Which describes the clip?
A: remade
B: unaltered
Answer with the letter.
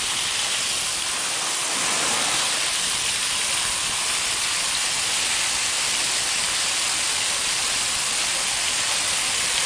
B